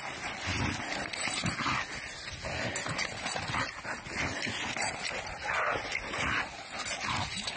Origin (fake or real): real